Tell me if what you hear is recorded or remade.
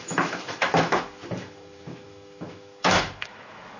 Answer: remade